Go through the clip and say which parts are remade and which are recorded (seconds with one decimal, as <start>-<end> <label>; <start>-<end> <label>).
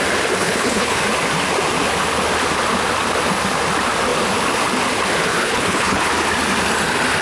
0.0-0.4 recorded; 0.4-1.0 remade; 1.0-5.3 recorded; 5.3-6.1 remade; 6.1-7.2 recorded